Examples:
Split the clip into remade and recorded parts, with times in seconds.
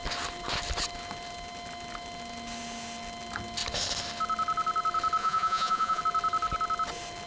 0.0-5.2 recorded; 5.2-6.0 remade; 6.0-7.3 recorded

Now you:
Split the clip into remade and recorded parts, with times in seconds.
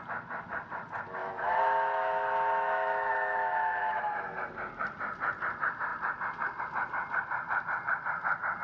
0.0-1.2 recorded; 1.2-4.0 remade; 4.0-8.6 recorded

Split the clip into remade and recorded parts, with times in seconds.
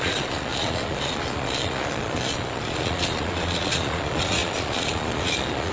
0.0-5.7 remade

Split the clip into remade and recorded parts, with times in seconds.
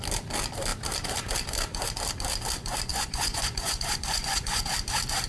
0.0-2.9 recorded; 2.9-4.6 remade; 4.6-5.3 recorded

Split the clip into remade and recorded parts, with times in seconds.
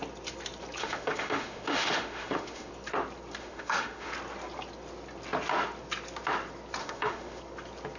0.0-0.8 recorded; 0.8-2.7 remade; 2.7-3.4 recorded; 3.4-4.1 remade; 4.1-6.8 recorded; 6.8-7.4 remade; 7.4-8.0 recorded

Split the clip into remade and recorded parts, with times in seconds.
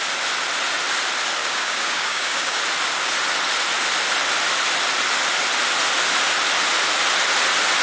0.0-1.4 recorded; 1.4-2.6 remade; 2.6-7.8 recorded